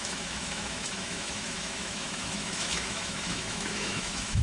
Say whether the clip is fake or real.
fake